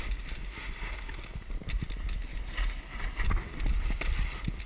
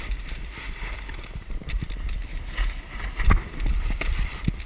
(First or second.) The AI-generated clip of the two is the second